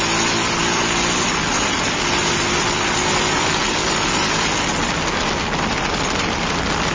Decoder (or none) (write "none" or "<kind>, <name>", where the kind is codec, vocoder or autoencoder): none